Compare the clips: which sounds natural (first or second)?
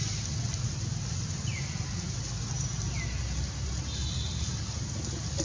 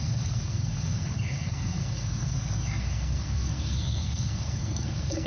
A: first